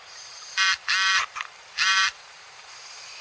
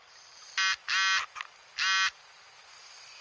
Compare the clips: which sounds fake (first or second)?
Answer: first